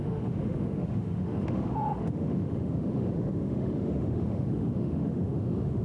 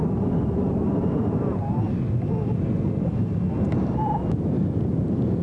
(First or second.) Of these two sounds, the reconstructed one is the first